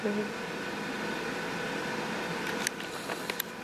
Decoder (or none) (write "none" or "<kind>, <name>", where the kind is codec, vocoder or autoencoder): none